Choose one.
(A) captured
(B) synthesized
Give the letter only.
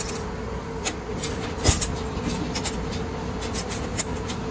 A